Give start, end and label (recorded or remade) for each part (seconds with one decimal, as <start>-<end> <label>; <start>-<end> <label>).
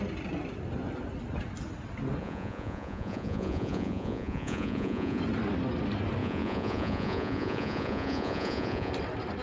0.0-2.2 recorded; 2.2-5.2 remade; 5.2-6.2 recorded; 6.2-8.9 remade; 8.9-9.4 recorded